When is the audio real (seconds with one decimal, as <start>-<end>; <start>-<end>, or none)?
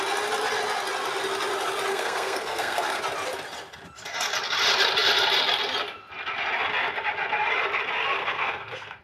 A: 0.0-1.9; 3.0-8.2